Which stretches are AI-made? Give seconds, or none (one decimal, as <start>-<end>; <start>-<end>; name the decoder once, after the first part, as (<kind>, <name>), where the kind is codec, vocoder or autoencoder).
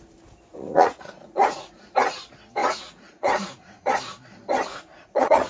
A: 0.5-1.9 (vocoder, Vocos); 2.6-3.9; 4.7-5.5